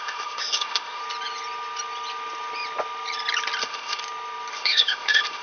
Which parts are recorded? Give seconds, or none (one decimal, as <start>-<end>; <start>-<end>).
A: 1.0-3.6; 4.0-4.5